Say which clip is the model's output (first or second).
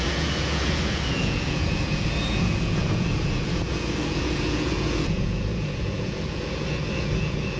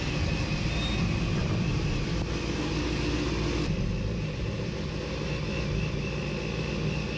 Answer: first